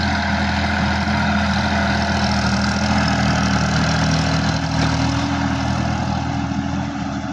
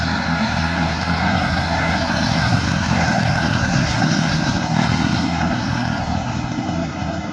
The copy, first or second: second